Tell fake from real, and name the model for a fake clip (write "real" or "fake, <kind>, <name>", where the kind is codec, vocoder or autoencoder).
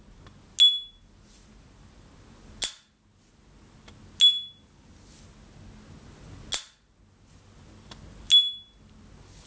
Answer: real